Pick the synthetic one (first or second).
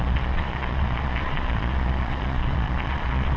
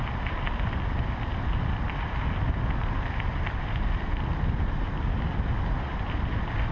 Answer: first